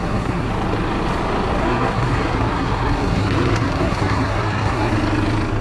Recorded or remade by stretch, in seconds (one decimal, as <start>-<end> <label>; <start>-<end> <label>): 0.0-0.5 remade; 0.5-1.6 recorded; 1.6-4.9 remade; 4.9-5.6 recorded